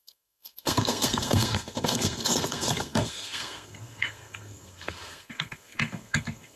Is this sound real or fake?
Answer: fake